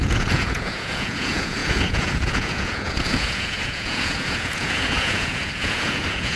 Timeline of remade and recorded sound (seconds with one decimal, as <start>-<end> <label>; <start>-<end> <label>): 0.0-6.4 remade